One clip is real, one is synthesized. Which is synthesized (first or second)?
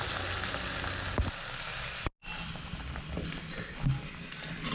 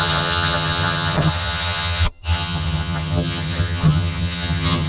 second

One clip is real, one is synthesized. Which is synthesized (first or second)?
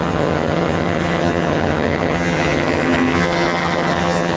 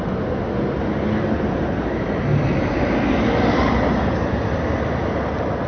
first